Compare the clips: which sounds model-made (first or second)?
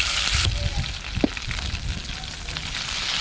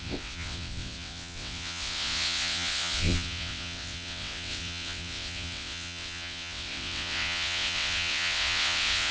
second